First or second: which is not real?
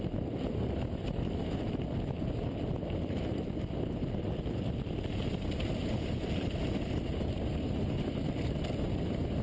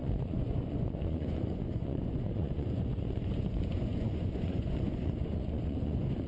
second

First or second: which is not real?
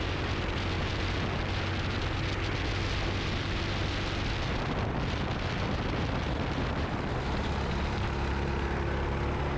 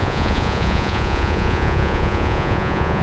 second